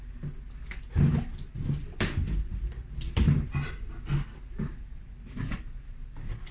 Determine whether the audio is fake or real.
real